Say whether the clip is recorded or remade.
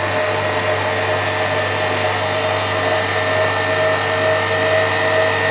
recorded